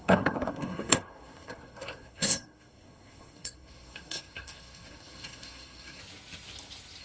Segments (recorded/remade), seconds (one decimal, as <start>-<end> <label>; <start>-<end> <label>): 0.0-6.0 remade; 6.0-7.0 recorded